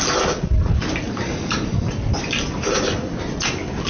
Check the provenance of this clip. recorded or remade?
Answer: recorded